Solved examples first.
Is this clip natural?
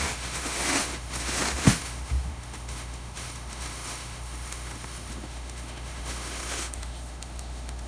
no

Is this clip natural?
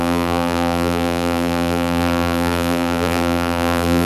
no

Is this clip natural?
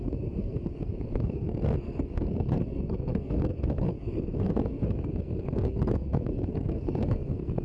no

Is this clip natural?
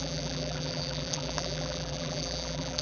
no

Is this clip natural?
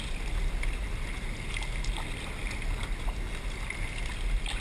yes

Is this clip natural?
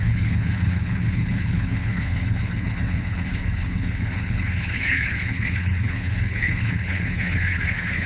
no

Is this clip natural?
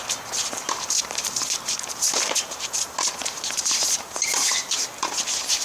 no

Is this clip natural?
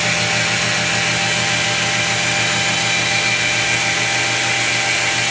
yes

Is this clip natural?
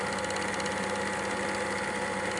yes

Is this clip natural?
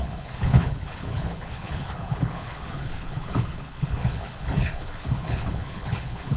no